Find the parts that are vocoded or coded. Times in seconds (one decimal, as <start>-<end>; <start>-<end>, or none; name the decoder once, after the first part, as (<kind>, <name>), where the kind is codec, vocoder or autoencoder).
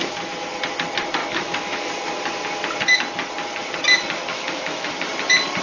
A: 1.2-1.9 (autoencoder, DAC-VAE); 4.3-4.9